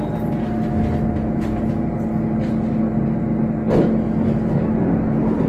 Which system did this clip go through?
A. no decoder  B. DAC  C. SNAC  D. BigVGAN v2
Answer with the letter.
A